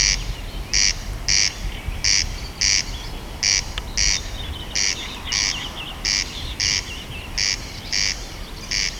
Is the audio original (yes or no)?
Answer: yes